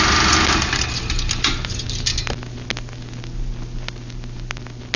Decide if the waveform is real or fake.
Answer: real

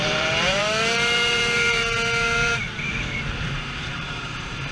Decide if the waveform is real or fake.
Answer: fake